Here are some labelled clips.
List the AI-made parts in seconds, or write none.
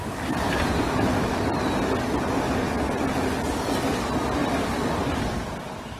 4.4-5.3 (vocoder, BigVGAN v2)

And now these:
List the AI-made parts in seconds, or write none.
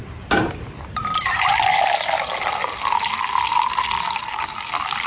none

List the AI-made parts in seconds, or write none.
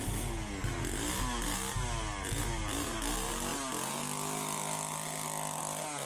none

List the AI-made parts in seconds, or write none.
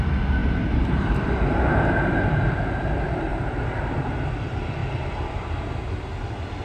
0.4-1.5 (vocoder, BigVGAN v2); 3.3-4.3; 4.8-6.1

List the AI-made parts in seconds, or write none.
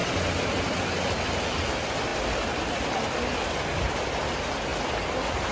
none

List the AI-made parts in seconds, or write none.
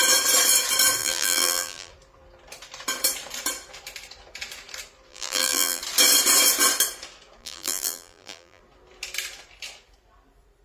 1.0-1.9 (vocoder, BigVGAN v2); 5.1-5.8; 7.4-8.6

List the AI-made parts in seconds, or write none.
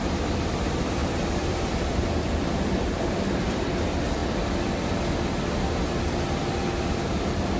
1.0-3.7 (vocoder, BigVGAN v2)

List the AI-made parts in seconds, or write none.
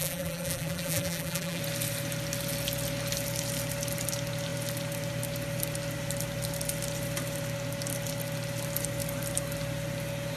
0.0-1.6 (vocoder, BigVGAN v2)